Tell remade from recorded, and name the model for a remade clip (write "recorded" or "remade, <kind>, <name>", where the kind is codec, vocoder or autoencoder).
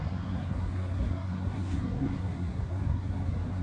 remade, codec, SNAC